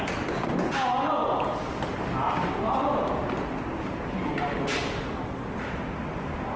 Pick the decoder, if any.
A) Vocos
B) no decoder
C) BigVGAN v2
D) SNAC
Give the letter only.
B